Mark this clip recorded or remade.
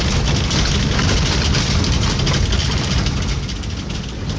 recorded